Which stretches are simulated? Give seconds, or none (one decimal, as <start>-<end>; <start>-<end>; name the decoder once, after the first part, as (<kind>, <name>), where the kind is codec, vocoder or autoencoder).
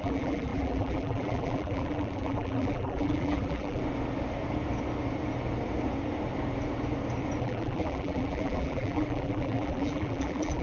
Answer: 0.0-3.8 (vocoder, BigVGAN v2); 7.4-10.6